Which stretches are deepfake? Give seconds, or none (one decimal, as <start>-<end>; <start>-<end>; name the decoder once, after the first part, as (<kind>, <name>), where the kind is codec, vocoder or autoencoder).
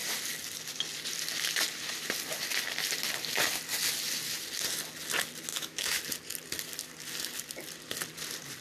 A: 5.5-6.0 (autoencoder, DAC-VAE)